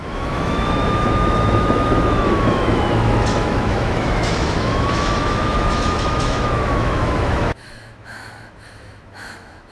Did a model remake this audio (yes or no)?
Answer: yes